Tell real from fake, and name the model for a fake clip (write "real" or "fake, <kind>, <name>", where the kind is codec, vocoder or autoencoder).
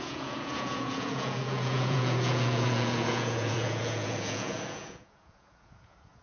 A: fake, vocoder, Vocos